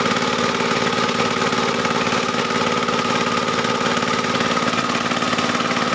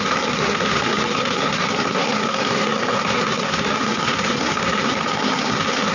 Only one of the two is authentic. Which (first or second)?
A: first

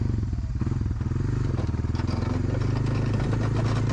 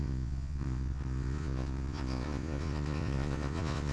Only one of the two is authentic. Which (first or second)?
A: first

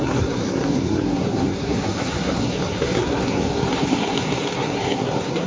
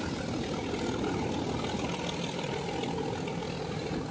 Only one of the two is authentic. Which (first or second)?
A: second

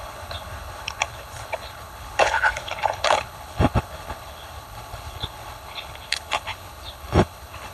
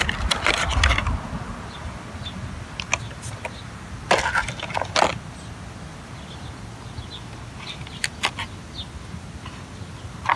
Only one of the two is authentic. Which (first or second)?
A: second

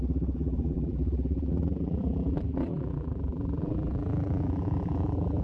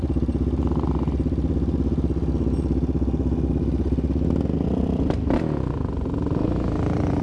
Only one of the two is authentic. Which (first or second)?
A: second